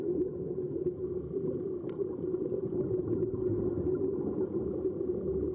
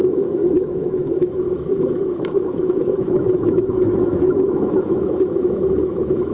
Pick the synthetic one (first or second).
second